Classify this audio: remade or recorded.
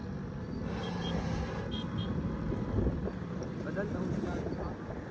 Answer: recorded